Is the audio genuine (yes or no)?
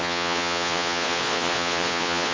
no